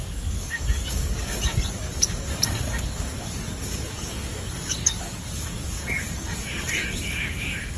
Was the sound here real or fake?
fake